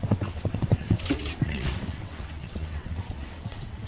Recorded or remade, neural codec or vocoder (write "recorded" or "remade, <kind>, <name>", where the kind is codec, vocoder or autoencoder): remade, vocoder, WaveNeXt